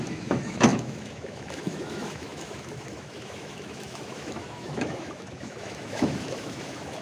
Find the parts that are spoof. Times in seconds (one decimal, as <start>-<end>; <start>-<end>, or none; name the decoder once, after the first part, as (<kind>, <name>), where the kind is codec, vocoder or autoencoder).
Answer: 0.0-7.0 (autoencoder, DAC-VAE)